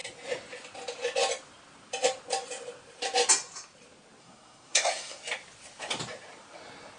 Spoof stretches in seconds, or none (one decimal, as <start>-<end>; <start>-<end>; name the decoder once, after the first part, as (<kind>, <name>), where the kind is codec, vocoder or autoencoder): 4.2-5.2 (codec, SNAC)